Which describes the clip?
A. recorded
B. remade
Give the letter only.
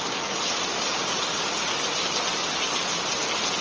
A